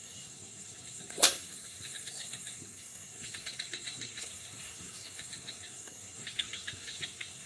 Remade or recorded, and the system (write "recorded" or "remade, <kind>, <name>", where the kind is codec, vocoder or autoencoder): remade, codec, SNAC